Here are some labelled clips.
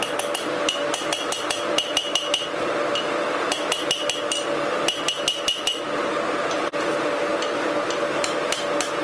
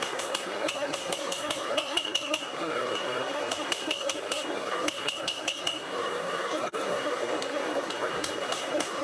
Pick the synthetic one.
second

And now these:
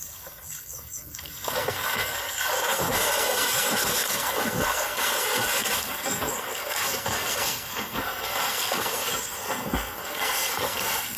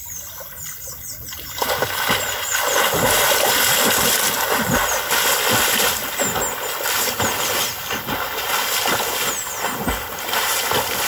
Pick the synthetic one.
first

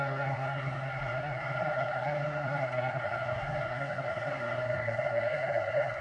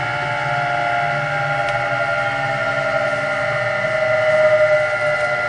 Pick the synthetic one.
first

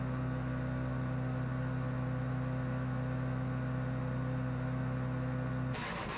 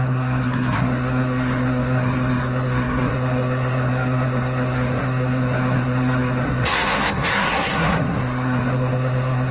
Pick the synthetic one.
second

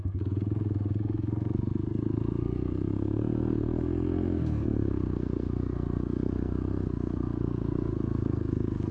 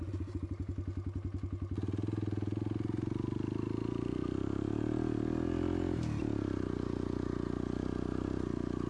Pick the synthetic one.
first